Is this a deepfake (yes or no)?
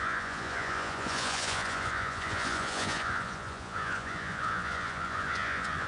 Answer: yes